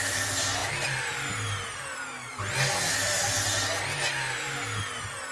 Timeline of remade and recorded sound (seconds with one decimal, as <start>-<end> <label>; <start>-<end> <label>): 0.0-0.6 recorded; 0.6-1.1 remade; 1.1-5.3 recorded